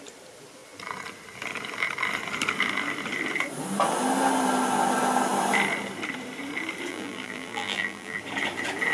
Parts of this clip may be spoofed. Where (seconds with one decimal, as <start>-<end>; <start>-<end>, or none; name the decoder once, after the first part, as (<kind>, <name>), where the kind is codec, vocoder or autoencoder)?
6.9-8.2 (vocoder, BigVGAN v2)

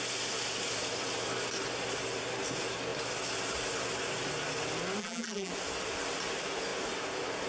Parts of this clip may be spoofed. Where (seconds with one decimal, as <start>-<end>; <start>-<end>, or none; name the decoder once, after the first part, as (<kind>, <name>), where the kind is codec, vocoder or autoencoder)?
5.0-5.5 (vocoder, BigVGAN v2)

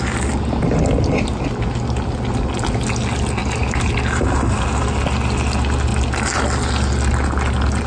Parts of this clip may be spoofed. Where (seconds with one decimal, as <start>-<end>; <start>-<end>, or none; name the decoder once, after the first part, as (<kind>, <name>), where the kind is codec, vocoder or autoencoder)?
3.4-3.9 (vocoder, BigVGAN v2)

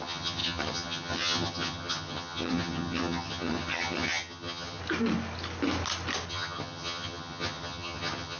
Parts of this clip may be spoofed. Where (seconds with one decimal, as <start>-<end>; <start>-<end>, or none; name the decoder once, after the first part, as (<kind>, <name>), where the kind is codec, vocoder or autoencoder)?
0.0-4.8 (vocoder, HiFi-GAN); 6.3-8.4

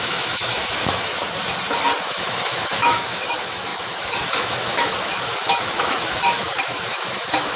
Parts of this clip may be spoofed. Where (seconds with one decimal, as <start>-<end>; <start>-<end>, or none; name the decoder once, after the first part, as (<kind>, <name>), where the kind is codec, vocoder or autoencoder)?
0.0-1.1 (autoencoder, DAC-VAE); 2.0-7.6

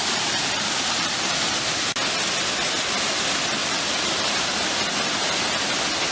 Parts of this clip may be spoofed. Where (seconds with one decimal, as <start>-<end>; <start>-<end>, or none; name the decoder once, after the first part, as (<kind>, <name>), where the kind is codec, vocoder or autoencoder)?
0.0-1.6 (vocoder, BigVGAN v2); 3.6-4.5

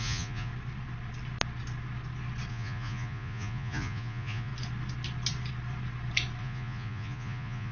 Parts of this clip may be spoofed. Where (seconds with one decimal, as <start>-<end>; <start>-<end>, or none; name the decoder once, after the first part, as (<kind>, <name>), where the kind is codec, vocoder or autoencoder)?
0.0-0.5 (vocoder, Vocos); 2.5-4.5; 6.4-7.7

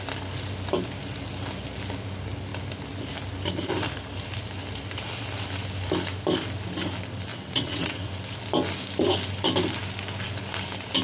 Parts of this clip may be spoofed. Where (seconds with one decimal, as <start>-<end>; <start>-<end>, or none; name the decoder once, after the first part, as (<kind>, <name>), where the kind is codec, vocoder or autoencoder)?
7.3-8.1 (vocoder, WaveNeXt)